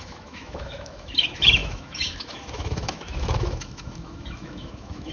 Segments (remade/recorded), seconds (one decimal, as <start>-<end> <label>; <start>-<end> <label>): 0.0-5.1 remade